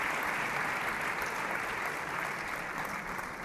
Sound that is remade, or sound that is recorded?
recorded